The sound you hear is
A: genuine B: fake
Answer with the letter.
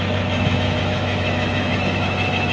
B